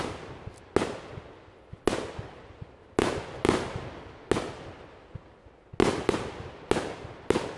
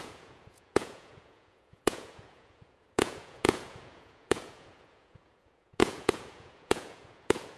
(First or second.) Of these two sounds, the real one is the first